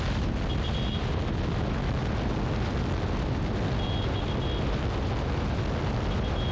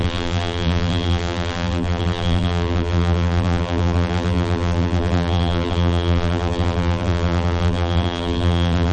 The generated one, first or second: second